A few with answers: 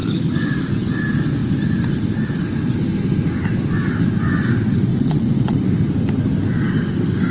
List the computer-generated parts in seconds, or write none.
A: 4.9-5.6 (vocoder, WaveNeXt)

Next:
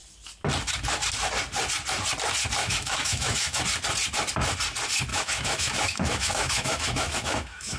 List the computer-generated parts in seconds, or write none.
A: 2.6-3.6 (autoencoder, DAC-VAE); 5.1-7.8